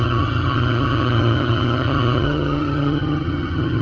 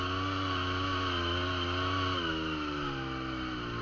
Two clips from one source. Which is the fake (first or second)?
first